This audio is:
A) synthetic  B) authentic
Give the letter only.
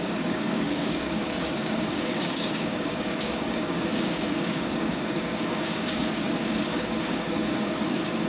A